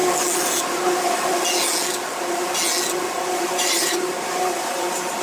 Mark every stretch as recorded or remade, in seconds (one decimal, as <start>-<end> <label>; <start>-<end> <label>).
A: 0.0-3.1 recorded; 3.1-5.2 remade